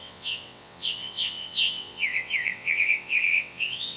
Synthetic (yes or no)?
yes